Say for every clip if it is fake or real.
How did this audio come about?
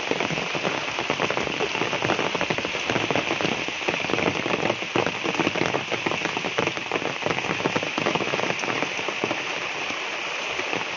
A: real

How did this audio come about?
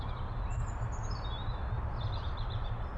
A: fake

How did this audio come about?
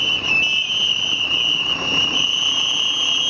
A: real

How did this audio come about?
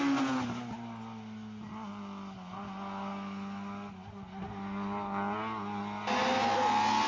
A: real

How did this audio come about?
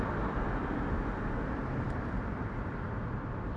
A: fake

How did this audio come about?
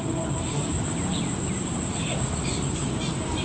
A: fake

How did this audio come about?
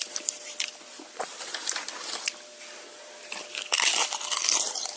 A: fake